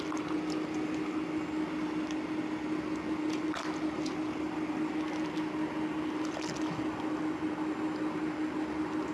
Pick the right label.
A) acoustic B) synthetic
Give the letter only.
A